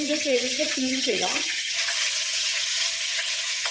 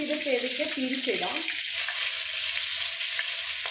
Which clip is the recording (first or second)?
second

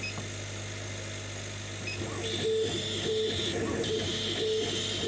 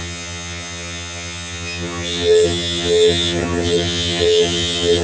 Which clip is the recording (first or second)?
first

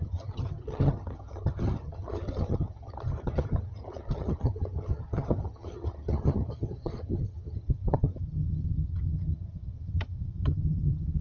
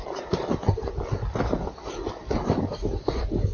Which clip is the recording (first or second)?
second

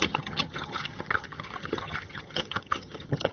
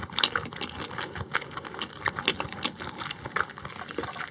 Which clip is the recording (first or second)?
second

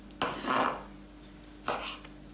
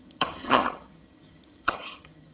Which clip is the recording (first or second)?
first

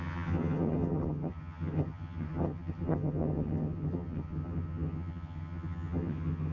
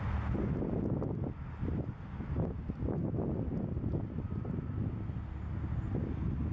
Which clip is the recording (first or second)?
second